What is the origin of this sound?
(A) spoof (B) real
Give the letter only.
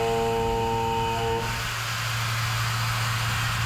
B